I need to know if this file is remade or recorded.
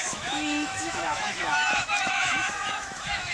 remade